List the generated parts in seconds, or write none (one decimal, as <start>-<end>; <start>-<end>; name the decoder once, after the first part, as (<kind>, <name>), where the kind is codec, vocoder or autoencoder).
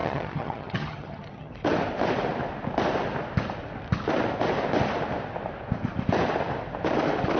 0.0-1.5 (vocoder, HiFi-GAN)